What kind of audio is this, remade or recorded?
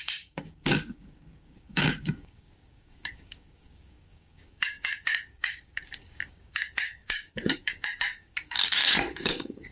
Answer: remade